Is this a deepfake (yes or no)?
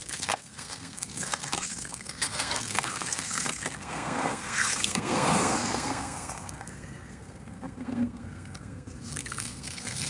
yes